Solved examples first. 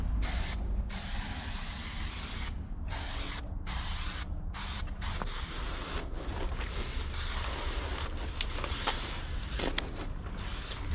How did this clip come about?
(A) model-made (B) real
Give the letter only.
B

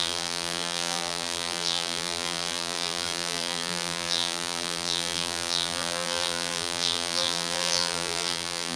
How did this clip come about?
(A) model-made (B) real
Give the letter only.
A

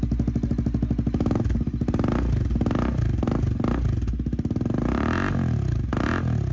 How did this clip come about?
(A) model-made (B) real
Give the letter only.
B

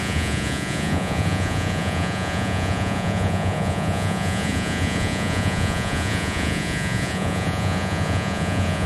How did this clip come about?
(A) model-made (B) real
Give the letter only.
A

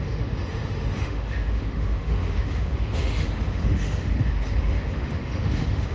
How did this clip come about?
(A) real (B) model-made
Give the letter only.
B